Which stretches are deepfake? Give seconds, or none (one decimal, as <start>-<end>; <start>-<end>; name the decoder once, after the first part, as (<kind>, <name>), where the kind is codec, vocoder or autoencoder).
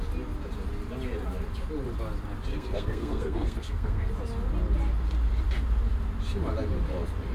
2.5-4.1 (codec, SNAC)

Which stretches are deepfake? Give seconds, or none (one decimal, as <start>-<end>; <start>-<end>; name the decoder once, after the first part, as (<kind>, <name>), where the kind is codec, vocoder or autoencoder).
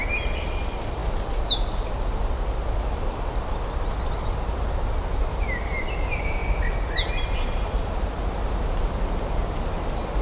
0.0-1.0 (vocoder, BigVGAN v2); 4.1-6.4; 9.1-10.2